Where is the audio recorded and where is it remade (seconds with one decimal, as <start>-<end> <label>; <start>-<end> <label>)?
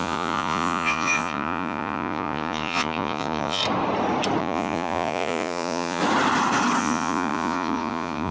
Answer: 0.0-3.6 remade; 3.6-4.4 recorded; 4.4-6.0 remade; 6.0-6.8 recorded; 6.8-8.3 remade